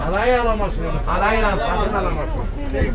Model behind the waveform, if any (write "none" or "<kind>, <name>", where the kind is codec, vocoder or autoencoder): vocoder, Vocos